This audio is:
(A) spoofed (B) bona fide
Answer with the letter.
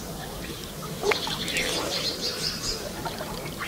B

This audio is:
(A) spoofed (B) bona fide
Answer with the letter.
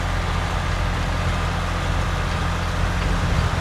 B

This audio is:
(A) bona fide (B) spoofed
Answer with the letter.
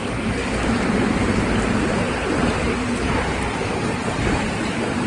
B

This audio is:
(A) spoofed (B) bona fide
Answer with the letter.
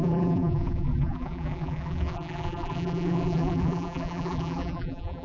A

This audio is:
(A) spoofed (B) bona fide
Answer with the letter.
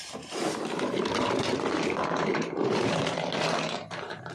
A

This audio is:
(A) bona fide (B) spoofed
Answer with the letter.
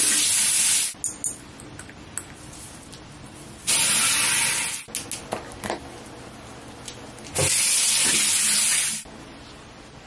A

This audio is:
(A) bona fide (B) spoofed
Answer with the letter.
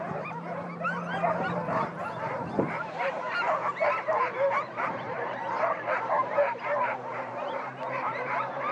B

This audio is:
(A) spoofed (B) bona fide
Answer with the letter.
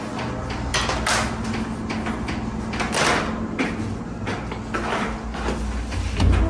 B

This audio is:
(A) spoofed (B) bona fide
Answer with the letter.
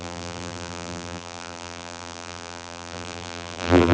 A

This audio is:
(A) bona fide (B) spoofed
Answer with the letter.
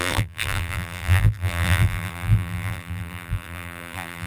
B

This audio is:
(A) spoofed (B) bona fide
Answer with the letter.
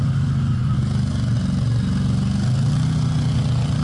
B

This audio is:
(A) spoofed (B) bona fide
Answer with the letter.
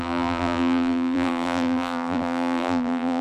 A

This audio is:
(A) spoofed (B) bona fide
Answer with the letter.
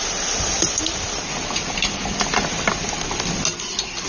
B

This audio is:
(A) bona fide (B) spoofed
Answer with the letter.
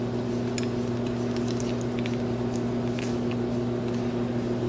A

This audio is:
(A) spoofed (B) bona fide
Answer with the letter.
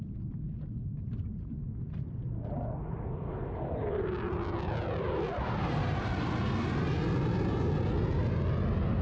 B